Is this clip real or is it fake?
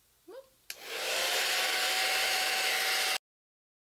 real